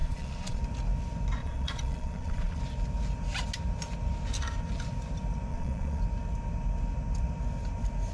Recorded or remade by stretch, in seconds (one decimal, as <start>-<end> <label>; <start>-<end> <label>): 0.0-0.6 remade; 0.6-1.4 recorded; 1.4-2.6 remade; 2.6-5.5 recorded; 5.5-6.0 remade; 6.0-8.1 recorded